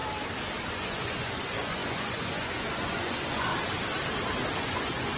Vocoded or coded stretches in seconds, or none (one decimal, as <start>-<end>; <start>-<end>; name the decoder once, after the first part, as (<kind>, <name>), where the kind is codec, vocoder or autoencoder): 0.7-3.5 (vocoder, Vocos); 4.6-5.2